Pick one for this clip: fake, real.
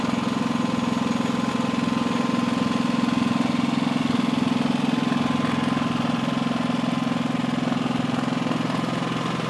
real